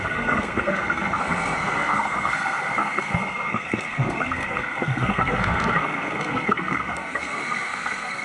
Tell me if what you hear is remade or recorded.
remade